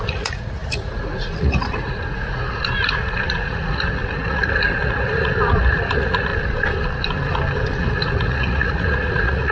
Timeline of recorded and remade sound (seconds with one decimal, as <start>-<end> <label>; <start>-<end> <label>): 0.0-6.3 remade; 6.3-7.8 recorded; 7.8-9.5 remade